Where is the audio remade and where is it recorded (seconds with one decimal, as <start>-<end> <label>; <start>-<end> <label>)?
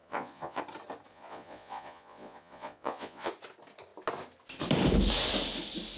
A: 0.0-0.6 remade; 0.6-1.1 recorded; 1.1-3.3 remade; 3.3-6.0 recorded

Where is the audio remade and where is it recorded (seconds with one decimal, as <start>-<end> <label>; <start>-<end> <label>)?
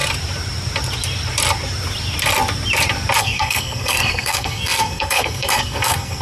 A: 0.0-3.2 recorded; 3.2-6.2 remade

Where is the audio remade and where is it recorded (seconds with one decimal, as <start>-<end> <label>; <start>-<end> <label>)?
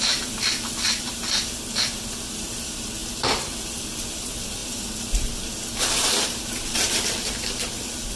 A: 0.0-1.2 remade; 1.2-2.6 recorded; 2.6-8.2 remade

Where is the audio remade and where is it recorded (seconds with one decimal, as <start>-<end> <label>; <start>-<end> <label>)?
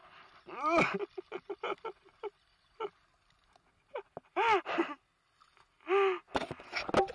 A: 0.0-7.1 recorded